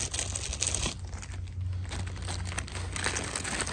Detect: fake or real real